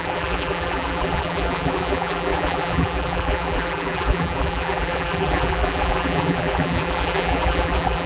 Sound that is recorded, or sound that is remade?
remade